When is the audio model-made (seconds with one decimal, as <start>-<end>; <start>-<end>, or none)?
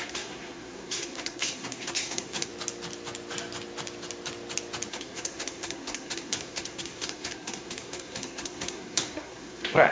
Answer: 0.0-2.5; 4.9-9.9